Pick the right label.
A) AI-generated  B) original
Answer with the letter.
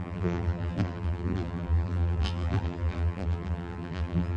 A